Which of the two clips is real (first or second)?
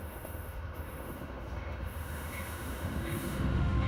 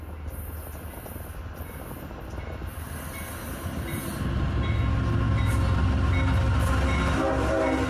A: second